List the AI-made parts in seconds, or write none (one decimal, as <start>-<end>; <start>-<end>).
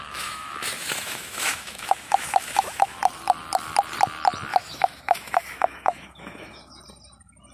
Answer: 0.0-3.0; 4.5-6.8